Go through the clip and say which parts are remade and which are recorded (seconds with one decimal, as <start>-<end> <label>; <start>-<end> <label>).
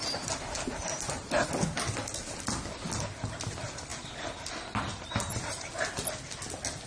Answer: 0.0-4.9 recorded; 4.9-5.7 remade; 5.7-6.9 recorded